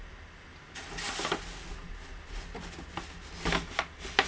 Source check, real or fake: real